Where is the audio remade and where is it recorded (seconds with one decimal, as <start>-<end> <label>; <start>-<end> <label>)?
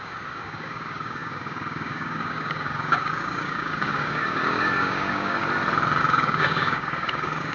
0.0-5.4 remade; 5.4-6.0 recorded; 6.0-7.5 remade